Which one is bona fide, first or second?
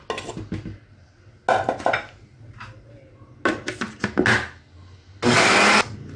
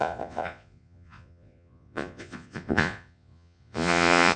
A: first